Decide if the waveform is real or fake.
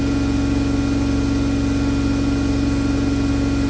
real